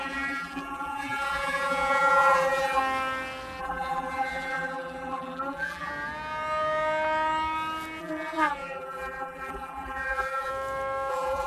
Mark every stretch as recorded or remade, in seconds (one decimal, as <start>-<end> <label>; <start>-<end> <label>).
0.0-2.8 remade; 2.8-3.6 recorded; 3.6-5.9 remade; 5.9-8.0 recorded; 8.0-10.5 remade; 10.5-11.1 recorded; 11.1-11.5 remade